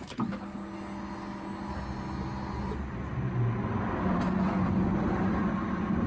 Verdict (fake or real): real